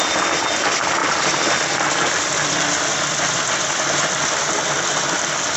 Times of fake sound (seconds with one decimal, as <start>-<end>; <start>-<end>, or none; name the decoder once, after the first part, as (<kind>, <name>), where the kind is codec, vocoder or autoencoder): 1.0-4.4 (vocoder, BigVGAN v2)